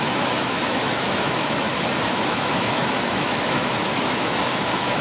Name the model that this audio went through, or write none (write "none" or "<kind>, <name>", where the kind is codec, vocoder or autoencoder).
autoencoder, DAC-VAE